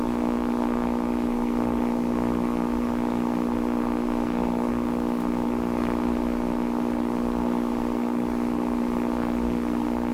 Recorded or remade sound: remade